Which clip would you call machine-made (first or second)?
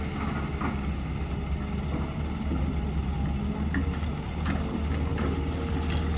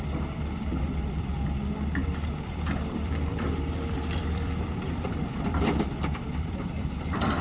second